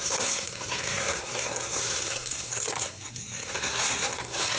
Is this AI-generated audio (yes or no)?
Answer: yes